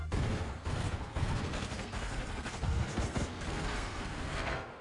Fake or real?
fake